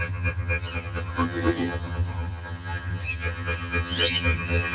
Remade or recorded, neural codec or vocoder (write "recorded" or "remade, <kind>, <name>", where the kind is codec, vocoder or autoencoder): remade, vocoder, HiFi-GAN